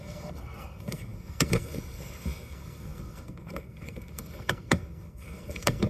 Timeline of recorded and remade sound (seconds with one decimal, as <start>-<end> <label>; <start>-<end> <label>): 0.0-5.9 remade